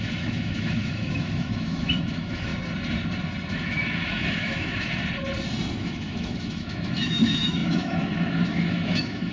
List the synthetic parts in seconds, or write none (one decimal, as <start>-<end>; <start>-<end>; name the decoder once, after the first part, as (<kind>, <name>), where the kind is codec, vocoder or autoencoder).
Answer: 0.0-2.5 (autoencoder, DAC-VAE); 3.5-5.0; 5.7-9.3